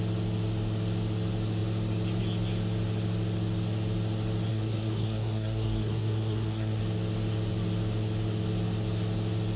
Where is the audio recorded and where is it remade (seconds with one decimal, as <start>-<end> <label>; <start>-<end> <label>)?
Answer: 0.0-4.5 recorded; 4.5-6.8 remade; 6.8-9.6 recorded